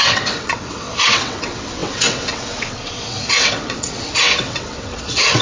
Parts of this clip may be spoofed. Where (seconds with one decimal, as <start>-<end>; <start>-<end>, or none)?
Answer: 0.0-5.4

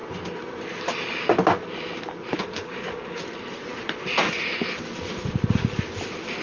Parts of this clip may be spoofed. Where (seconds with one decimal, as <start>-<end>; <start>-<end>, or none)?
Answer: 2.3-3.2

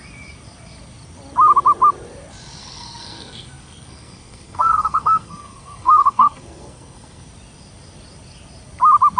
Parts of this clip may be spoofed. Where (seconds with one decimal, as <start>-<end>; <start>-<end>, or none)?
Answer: 2.6-7.3

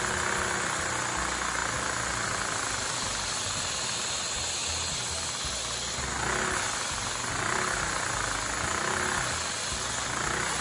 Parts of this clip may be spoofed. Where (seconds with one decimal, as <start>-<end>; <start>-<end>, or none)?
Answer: none

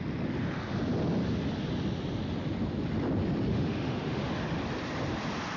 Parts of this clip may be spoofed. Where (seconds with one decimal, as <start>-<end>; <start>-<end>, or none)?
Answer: 3.5-4.3

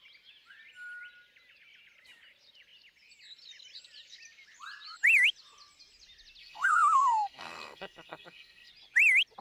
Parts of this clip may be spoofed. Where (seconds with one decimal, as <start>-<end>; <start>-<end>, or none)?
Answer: 6.4-8.7

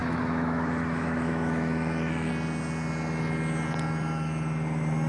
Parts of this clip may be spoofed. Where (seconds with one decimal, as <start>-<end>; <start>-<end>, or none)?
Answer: 0.0-2.3